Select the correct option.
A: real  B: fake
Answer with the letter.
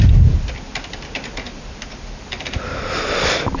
A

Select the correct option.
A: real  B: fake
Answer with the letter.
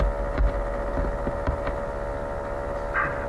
A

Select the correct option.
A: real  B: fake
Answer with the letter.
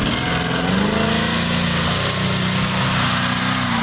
A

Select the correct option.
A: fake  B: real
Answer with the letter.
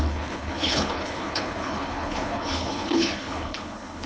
A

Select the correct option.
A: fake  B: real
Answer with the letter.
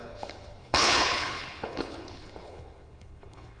A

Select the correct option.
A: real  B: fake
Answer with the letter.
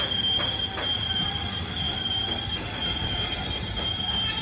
A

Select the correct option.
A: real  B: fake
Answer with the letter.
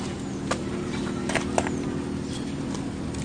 A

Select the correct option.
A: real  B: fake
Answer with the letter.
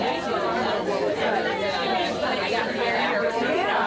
A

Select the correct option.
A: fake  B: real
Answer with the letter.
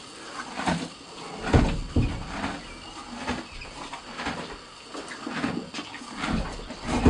B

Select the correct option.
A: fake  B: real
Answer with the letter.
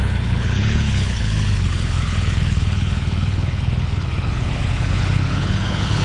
A